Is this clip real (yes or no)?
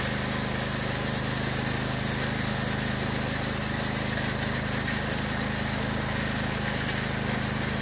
yes